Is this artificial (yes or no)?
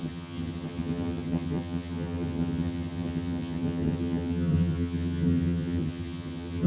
yes